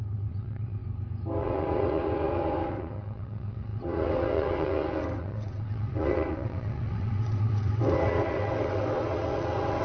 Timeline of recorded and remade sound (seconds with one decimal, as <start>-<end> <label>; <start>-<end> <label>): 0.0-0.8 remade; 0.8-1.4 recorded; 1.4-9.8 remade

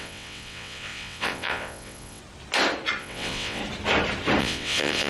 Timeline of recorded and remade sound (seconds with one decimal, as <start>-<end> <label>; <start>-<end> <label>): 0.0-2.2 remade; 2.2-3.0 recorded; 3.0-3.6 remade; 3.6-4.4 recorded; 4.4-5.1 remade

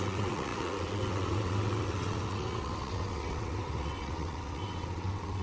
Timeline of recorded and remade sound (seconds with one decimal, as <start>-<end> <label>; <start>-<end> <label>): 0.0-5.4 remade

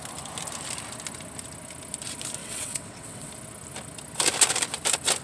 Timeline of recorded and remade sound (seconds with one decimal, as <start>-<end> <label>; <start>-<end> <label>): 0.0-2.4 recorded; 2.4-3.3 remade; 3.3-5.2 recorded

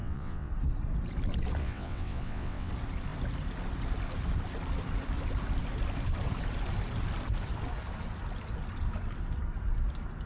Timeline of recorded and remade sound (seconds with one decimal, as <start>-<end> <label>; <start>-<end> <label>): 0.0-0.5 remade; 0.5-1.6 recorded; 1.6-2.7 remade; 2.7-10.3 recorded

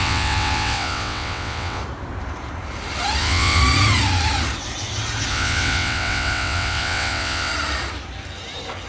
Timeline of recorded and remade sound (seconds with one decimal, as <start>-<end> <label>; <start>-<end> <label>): 0.0-1.8 remade; 1.8-3.2 recorded; 3.2-3.6 remade; 3.6-5.3 recorded; 5.3-7.5 remade; 7.5-8.9 recorded